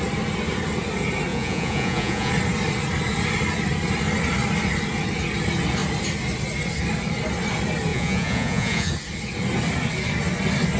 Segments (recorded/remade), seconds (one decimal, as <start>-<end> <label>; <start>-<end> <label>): 0.0-1.3 recorded; 1.3-2.3 remade; 2.3-7.9 recorded; 7.9-8.9 remade; 8.9-10.8 recorded